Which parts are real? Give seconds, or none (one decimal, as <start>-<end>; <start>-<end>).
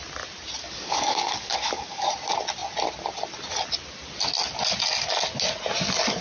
0.0-0.6; 2.1-6.2